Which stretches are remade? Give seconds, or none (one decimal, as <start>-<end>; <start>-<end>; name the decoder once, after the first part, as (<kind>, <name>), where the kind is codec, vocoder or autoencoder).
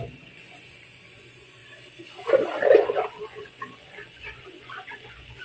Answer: 0.0-1.6 (vocoder, Vocos); 3.1-5.4